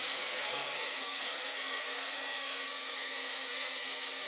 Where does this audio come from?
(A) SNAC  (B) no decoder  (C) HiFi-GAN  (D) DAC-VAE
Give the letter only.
A